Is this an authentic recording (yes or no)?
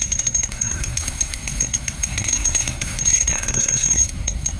no